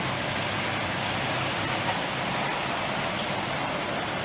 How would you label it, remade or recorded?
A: remade